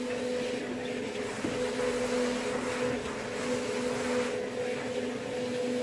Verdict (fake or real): real